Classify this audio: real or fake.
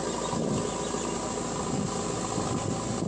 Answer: real